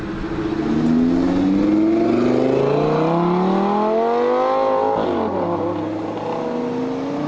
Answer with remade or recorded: recorded